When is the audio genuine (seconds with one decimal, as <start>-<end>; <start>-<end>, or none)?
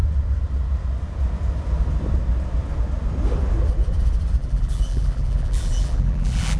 0.0-4.4